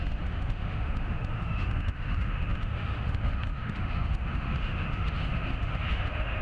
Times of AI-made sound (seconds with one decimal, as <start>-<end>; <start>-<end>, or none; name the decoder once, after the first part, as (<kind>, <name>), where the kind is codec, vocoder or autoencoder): 0.0-6.4 (autoencoder, DAC-VAE)